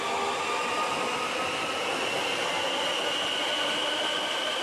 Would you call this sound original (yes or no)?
yes